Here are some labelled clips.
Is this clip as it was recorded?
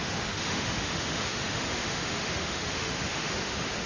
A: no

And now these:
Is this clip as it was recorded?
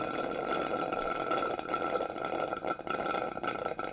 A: yes